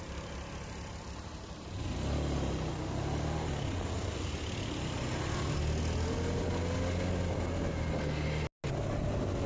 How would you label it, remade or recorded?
recorded